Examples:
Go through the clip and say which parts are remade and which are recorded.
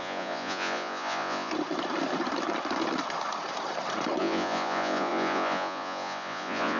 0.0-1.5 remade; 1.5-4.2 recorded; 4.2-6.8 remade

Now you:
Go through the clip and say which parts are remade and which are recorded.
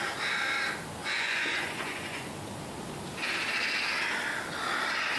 0.0-1.0 recorded; 1.0-2.3 remade; 2.3-5.2 recorded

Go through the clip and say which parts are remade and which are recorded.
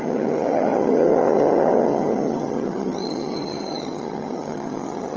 0.0-5.2 remade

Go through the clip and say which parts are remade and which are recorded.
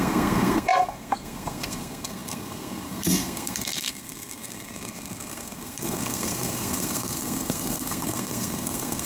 0.0-9.1 remade